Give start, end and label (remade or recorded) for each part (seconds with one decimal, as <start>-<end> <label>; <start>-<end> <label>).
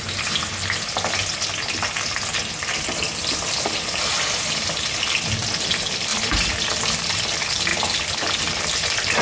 0.0-6.1 recorded; 6.1-6.7 remade; 6.7-9.2 recorded